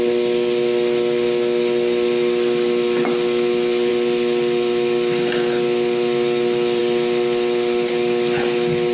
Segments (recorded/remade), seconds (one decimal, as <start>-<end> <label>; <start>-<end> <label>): 0.0-8.9 recorded